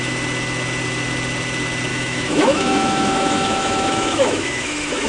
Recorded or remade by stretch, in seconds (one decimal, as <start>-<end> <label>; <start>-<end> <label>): 0.0-1.9 recorded; 1.9-5.1 remade